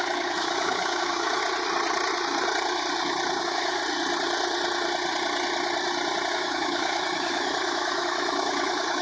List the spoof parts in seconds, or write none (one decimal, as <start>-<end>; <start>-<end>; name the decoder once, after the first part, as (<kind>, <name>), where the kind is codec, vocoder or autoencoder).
0.0-1.4 (autoencoder, DAC-VAE); 3.4-3.8; 6.3-9.0